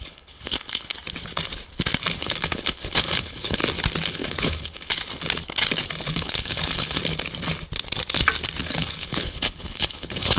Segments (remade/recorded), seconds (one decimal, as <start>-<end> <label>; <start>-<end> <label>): 0.0-0.9 remade; 0.9-2.2 recorded; 2.2-3.6 remade; 3.6-4.1 recorded; 4.1-4.9 remade; 4.9-6.1 recorded; 6.1-7.0 remade; 7.0-8.6 recorded; 8.6-10.4 remade